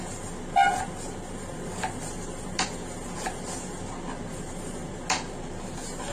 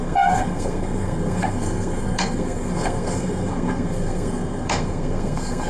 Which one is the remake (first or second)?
second